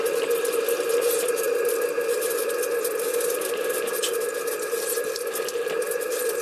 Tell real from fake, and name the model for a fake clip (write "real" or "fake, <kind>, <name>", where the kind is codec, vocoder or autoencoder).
real